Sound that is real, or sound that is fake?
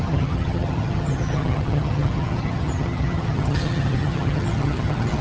fake